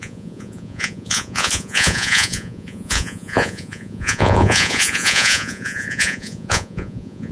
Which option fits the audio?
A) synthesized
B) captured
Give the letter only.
A